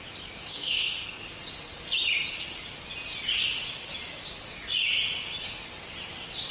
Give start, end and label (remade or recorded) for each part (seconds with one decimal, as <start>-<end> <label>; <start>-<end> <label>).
0.0-0.5 recorded; 0.5-1.2 remade; 1.2-6.5 recorded